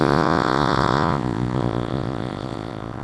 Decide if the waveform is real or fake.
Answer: fake